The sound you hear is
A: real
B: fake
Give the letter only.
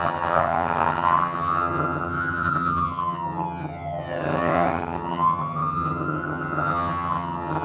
B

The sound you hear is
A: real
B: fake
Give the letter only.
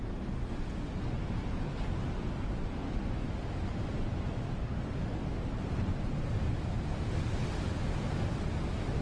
A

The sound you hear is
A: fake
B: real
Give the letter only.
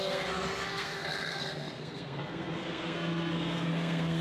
A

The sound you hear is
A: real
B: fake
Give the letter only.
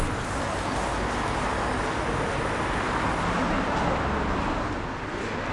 A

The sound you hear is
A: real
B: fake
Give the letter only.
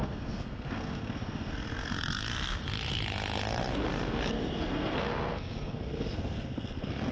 B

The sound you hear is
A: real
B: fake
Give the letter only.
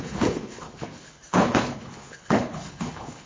B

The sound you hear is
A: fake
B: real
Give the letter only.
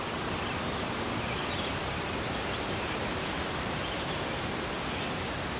B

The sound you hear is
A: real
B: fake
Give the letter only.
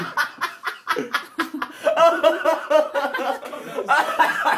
A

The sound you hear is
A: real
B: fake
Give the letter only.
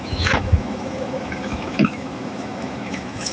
B